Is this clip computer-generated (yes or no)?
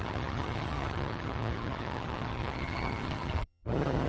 yes